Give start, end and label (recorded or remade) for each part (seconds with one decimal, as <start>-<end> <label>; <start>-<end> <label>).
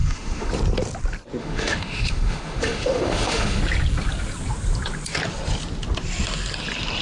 0.0-0.5 remade; 0.5-1.4 recorded; 1.4-3.6 remade; 3.6-7.0 recorded